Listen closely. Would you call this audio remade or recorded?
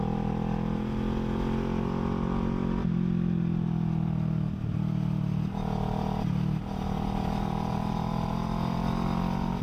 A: recorded